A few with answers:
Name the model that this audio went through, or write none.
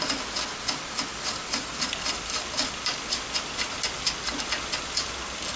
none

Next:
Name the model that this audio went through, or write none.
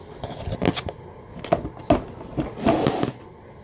none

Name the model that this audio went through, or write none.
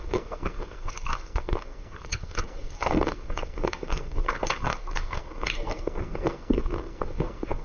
codec, SNAC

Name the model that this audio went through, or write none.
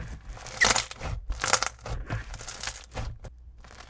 none